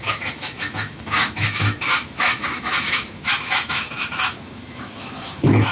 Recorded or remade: remade